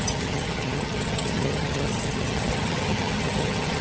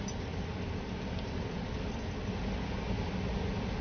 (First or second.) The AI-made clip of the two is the first